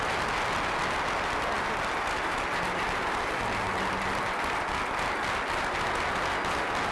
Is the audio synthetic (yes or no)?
no